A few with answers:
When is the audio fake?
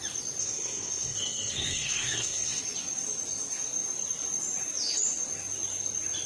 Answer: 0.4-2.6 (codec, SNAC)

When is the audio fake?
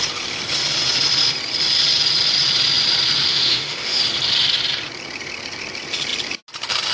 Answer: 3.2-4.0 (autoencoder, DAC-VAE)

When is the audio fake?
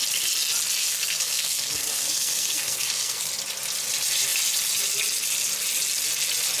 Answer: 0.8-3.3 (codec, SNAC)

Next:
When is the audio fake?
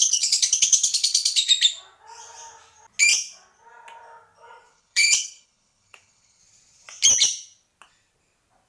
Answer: 0.0-1.5 (codec, HILCodec); 4.7-6.4